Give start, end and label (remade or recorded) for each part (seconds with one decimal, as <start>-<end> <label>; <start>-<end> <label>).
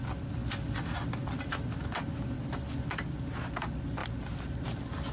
0.0-5.1 recorded